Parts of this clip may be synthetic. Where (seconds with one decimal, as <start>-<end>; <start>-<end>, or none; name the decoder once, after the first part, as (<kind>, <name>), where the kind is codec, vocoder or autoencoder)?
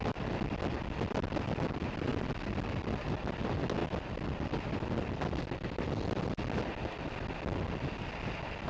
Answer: none